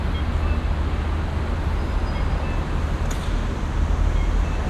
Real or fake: real